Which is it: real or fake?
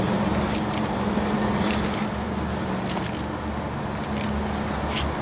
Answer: real